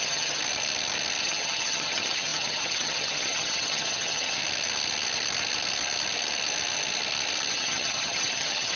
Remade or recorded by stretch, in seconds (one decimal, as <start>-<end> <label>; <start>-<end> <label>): 0.0-0.4 remade; 0.4-1.2 recorded; 1.2-4.4 remade; 4.4-7.5 recorded; 7.5-8.8 remade

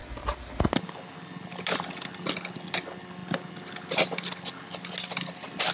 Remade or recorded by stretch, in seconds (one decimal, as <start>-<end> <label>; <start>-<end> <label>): 0.0-5.7 recorded

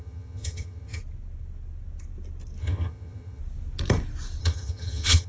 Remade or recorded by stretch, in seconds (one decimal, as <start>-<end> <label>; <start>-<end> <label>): 0.0-1.0 remade; 1.0-2.6 recorded; 2.6-3.4 remade; 3.4-4.4 recorded; 4.4-5.3 remade

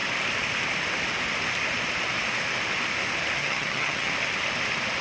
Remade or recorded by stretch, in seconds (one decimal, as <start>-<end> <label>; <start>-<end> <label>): 0.0-3.4 recorded; 3.4-4.1 remade; 4.1-5.0 recorded

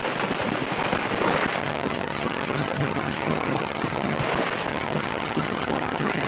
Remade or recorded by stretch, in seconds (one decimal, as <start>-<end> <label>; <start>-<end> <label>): 0.0-1.6 recorded; 1.6-4.2 remade; 4.2-4.7 recorded; 4.7-6.3 remade

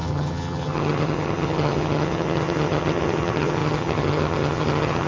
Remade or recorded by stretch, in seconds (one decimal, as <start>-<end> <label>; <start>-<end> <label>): 0.0-5.1 remade